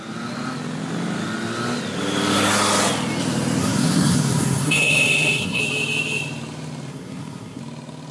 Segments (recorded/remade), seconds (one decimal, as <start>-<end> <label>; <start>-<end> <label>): 0.0-3.6 recorded; 3.6-5.6 remade; 5.6-6.9 recorded; 6.9-7.6 remade; 7.6-8.1 recorded

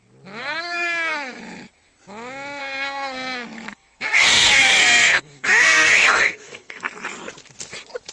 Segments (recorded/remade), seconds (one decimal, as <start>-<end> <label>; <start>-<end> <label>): 0.0-0.4 recorded; 0.4-1.4 remade; 1.4-2.6 recorded; 2.6-6.9 remade; 6.9-8.1 recorded